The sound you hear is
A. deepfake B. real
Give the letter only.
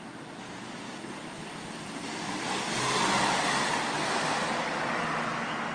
B